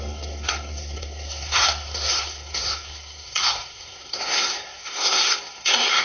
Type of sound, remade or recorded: remade